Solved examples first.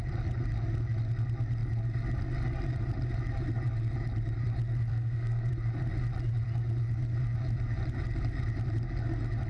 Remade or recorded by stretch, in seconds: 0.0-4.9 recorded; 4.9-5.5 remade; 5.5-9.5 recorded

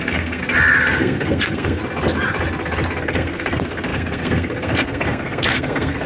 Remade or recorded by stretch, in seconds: 0.0-0.4 remade; 0.4-1.0 recorded; 1.0-1.8 remade; 1.8-3.0 recorded; 3.0-6.1 remade

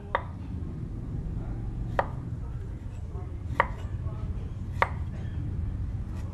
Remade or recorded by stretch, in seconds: 0.0-6.3 recorded

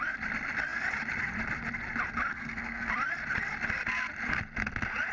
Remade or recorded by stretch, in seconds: 0.0-2.3 recorded; 2.3-2.9 remade; 2.9-5.1 recorded